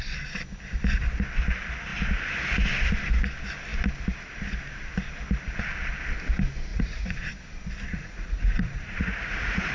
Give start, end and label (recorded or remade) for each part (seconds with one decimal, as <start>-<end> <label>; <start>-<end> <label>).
0.0-6.7 recorded; 6.7-7.3 remade; 7.3-7.9 recorded; 7.9-9.7 remade